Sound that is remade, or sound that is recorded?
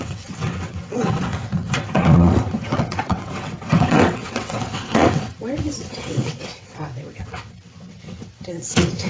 remade